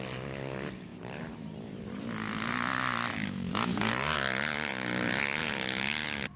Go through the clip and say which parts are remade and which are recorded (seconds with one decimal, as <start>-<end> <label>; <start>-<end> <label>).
0.0-0.9 recorded; 0.9-1.8 remade; 1.8-3.1 recorded; 3.1-3.9 remade; 3.9-6.4 recorded